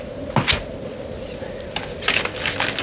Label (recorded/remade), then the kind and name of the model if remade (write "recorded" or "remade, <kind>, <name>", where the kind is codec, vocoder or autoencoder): recorded